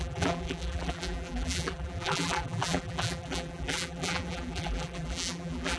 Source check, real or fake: fake